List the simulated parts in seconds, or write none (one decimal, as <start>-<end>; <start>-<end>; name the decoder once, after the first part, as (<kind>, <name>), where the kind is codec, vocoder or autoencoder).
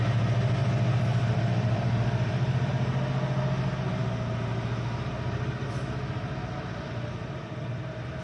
0.6-2.7 (vocoder, BigVGAN v2); 7.4-8.2